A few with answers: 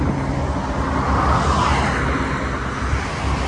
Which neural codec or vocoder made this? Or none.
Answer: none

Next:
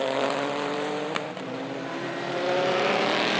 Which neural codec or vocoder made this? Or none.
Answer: vocoder, BigVGAN v2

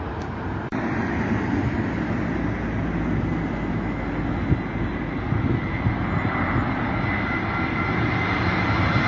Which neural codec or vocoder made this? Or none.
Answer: none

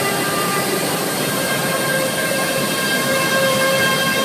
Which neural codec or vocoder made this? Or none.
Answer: vocoder, BigVGAN v2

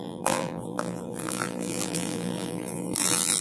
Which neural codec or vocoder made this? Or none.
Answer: vocoder, BigVGAN v2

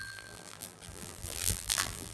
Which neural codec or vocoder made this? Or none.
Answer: vocoder, BigVGAN v2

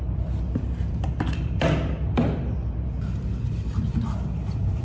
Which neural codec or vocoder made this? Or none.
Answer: vocoder, BigVGAN v2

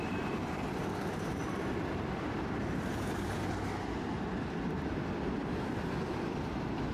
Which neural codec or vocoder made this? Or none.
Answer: vocoder, BigVGAN v2